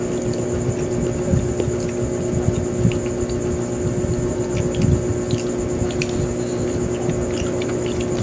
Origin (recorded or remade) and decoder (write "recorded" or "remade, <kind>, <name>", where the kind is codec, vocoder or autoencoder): recorded